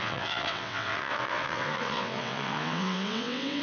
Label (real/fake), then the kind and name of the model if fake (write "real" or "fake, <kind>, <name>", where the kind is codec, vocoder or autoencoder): fake, vocoder, WaveNeXt